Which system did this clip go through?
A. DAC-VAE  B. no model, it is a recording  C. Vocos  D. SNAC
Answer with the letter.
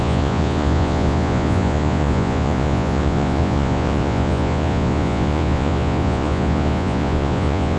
C